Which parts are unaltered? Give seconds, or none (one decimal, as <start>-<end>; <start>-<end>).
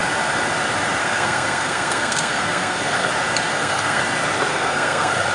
0.0-1.0; 3.1-3.5; 4.0-4.5